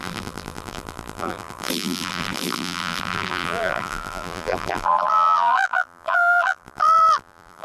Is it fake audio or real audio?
fake